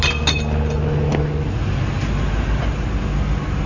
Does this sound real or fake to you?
real